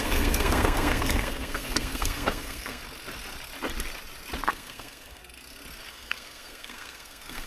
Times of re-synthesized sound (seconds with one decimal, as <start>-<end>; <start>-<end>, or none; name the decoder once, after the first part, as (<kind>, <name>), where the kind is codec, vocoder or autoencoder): 0.0-2.8 (codec, SNAC); 4.5-5.2; 5.9-7.5